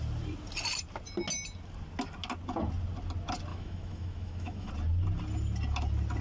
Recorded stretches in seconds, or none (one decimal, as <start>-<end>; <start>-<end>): 0.0-3.5; 4.7-6.2